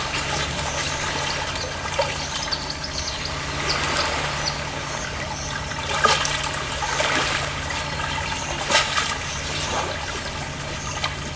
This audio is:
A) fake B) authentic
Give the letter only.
B